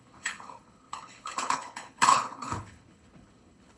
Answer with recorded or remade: remade